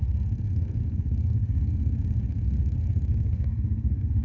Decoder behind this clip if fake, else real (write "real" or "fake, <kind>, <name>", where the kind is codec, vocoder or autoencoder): fake, codec, SNAC